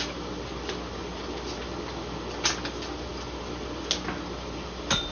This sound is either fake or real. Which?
real